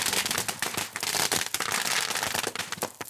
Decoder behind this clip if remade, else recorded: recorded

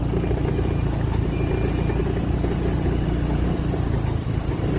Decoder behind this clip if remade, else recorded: recorded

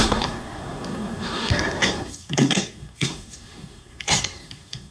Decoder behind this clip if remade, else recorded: remade, codec, SNAC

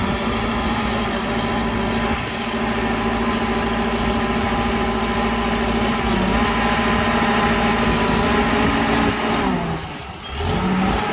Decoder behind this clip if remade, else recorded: recorded